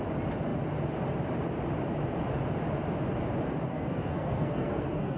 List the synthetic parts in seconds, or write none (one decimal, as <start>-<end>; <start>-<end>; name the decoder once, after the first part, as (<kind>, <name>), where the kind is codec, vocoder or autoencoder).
3.7-5.2 (codec, SNAC)